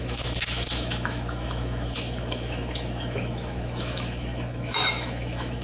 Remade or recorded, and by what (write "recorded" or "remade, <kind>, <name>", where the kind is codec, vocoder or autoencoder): remade, autoencoder, DAC-VAE